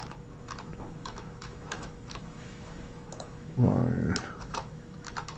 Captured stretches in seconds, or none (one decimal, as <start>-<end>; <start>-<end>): 3.8-4.4